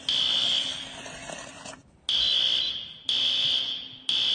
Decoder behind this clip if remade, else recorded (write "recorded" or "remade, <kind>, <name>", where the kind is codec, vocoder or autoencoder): recorded